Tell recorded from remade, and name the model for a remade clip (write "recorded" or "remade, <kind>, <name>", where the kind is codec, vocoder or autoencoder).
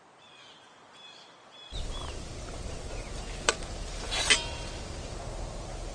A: recorded